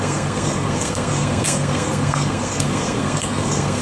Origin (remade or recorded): remade